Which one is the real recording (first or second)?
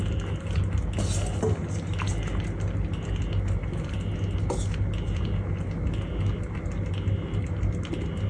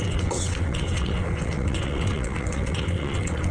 first